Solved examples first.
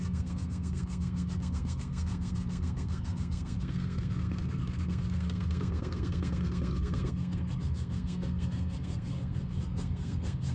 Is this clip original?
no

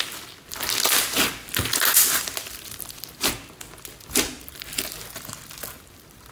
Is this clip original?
yes